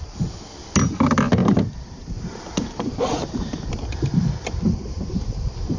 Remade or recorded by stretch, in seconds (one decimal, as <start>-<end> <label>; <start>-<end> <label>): 0.0-1.4 recorded; 1.4-3.6 remade; 3.6-5.8 recorded